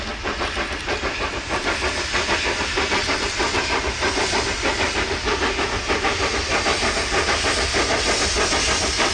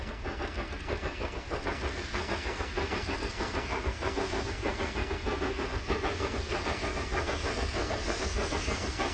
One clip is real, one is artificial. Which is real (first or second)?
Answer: first